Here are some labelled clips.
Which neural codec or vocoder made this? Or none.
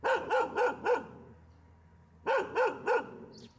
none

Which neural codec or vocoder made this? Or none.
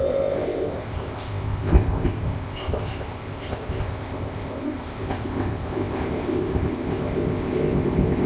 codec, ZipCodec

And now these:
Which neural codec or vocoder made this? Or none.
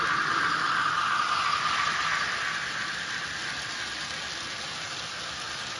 none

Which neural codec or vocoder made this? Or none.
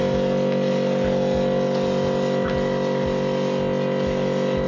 none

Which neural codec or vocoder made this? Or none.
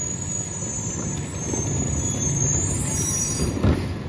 none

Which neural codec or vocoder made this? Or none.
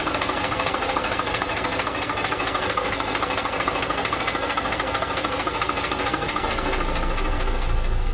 codec, SNAC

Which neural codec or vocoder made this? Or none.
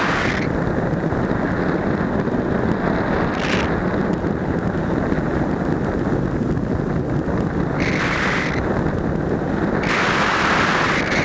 none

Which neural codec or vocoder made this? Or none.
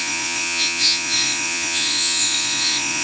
vocoder, Vocos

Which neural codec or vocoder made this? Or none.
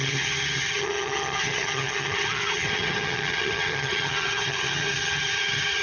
vocoder, HiFi-GAN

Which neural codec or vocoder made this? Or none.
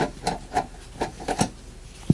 none